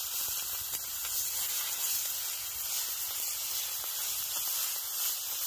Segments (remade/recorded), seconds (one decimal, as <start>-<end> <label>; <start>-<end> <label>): 0.0-5.5 recorded